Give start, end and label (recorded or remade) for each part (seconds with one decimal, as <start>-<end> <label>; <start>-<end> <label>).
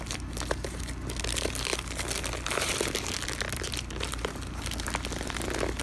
0.0-5.8 recorded